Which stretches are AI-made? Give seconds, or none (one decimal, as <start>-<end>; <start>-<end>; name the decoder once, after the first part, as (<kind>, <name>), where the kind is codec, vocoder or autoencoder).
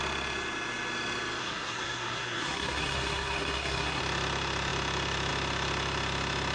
1.4-4.0 (codec, SNAC)